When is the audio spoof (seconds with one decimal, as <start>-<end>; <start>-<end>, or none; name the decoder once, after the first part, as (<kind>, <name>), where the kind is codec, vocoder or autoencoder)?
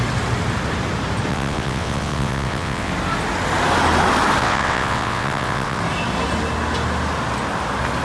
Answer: 1.3-2.9 (vocoder, WaveNeXt); 4.4-5.8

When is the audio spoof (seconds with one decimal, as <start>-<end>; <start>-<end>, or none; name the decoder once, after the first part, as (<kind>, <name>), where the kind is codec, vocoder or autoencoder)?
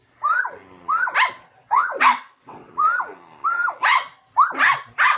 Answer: 1.6-2.7 (vocoder, WaveNeXt)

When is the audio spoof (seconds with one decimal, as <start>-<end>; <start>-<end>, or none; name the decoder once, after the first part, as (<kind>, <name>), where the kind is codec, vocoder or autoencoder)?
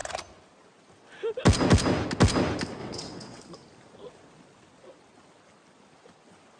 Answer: 2.8-3.4 (vocoder, WaveNeXt)